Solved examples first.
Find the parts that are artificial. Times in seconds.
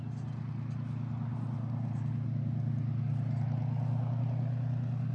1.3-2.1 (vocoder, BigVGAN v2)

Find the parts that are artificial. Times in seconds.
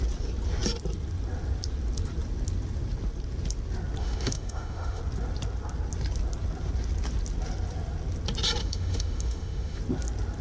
4.0-5.0 (autoencoder, DAC-VAE); 8.6-9.8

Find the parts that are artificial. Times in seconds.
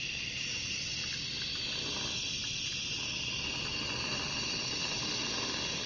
none